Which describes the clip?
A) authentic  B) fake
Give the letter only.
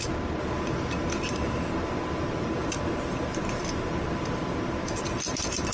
B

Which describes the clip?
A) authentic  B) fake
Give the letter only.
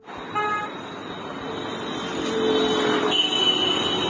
A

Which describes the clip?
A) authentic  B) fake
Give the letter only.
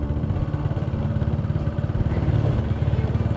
B